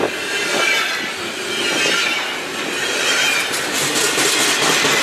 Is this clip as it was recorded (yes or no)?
yes